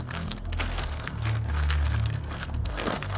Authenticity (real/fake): fake